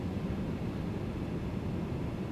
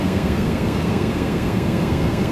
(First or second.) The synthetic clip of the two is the second